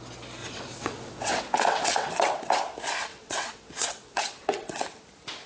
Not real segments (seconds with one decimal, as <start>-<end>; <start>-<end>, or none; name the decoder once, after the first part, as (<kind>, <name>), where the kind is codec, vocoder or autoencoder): 0.4-2.5 (vocoder, WaveNeXt); 3.1-5.0